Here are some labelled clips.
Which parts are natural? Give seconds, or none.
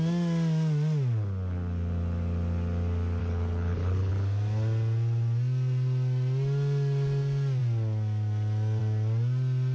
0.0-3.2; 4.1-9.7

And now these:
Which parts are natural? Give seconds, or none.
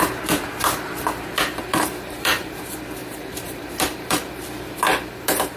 0.0-1.7; 2.6-3.0; 4.3-5.6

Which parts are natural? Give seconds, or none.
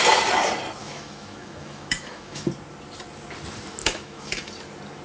0.0-0.8; 2.5-3.8; 4.5-5.0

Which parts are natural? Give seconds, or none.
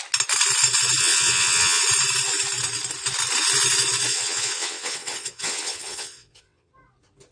0.0-1.0; 1.8-4.1; 6.7-7.3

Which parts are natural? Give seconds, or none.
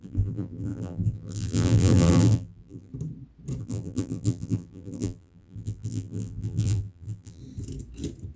2.9-3.6; 7.4-8.4